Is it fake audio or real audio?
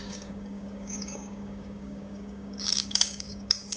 fake